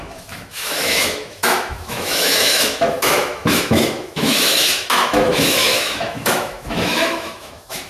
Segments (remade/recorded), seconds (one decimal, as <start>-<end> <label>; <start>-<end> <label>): 0.0-7.9 remade